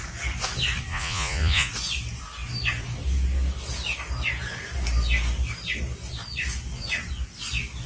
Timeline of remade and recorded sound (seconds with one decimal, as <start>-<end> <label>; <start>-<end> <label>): 0.0-0.9 recorded; 0.9-1.7 remade; 1.7-7.9 recorded